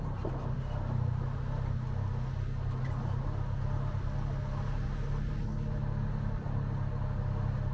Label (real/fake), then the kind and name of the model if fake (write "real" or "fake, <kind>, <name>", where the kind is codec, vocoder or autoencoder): real